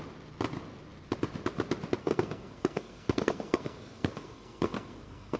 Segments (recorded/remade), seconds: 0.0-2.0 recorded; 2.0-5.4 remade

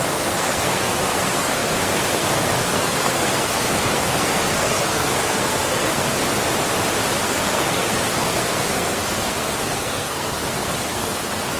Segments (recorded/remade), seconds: 0.0-6.2 remade; 6.2-7.2 recorded; 7.2-11.6 remade

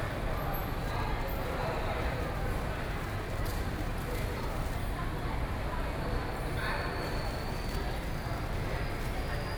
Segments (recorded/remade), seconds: 0.0-1.6 recorded; 1.6-3.1 remade; 3.1-3.5 recorded; 3.5-4.6 remade; 4.6-9.6 recorded

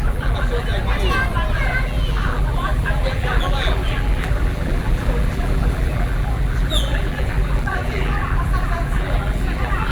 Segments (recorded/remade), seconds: 0.0-0.7 remade; 0.7-1.5 recorded; 1.5-9.9 remade

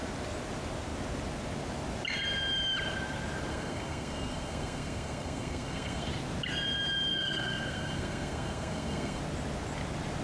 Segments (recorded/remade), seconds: 0.0-3.5 recorded; 3.5-6.1 remade; 6.1-7.1 recorded; 7.1-9.2 remade; 9.2-10.2 recorded